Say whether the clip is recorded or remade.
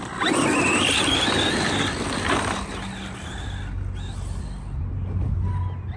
recorded